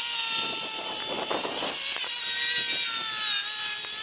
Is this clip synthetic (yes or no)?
no